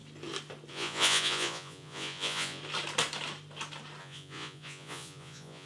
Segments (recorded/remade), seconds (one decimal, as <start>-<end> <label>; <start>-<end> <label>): 0.0-0.7 recorded; 0.7-2.6 remade; 2.6-4.0 recorded; 4.0-5.7 remade